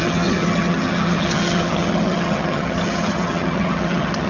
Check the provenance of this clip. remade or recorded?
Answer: remade